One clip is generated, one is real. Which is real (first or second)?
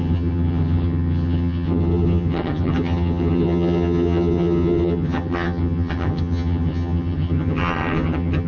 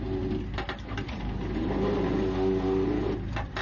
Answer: second